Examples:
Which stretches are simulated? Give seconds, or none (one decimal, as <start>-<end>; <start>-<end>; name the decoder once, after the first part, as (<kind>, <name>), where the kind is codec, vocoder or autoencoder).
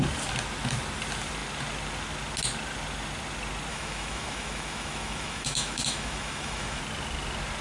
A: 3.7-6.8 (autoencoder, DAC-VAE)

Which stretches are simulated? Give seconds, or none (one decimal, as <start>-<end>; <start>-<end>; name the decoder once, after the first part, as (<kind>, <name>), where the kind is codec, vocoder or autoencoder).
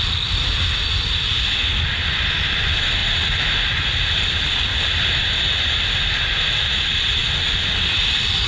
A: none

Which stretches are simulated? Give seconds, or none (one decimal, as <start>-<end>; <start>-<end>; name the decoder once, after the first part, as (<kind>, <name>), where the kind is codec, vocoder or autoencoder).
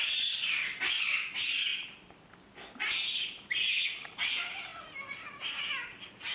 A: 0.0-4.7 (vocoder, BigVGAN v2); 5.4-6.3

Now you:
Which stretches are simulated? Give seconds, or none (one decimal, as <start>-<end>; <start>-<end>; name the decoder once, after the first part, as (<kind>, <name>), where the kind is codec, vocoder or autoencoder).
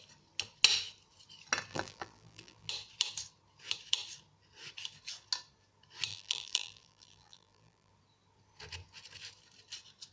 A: 1.7-2.7 (vocoder, BigVGAN v2); 6.1-7.9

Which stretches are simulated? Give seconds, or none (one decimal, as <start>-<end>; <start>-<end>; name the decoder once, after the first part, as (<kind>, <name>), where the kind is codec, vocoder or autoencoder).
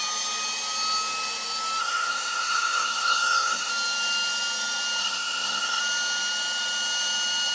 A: 1.8-3.7 (codec, SNAC); 5.0-5.8